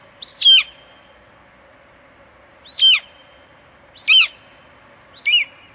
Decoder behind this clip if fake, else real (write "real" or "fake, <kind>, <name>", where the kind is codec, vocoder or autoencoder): real